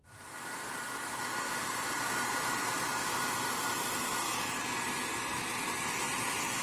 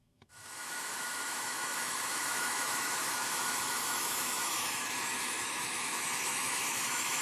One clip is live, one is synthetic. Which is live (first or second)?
first